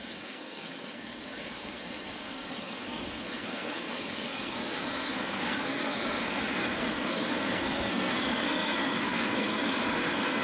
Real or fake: fake